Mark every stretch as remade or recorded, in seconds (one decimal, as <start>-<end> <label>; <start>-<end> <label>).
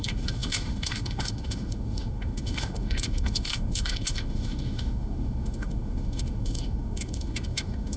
0.0-8.0 remade